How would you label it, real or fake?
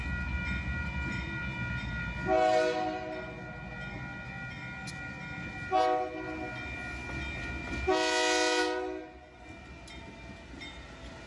real